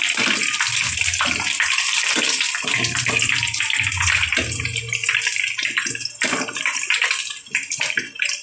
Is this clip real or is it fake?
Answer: real